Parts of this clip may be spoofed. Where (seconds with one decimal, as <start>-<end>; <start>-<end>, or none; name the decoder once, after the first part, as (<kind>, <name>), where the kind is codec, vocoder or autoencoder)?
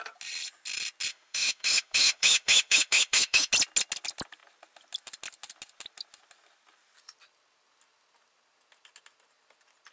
1.1-3.5 (autoencoder, DAC-VAE)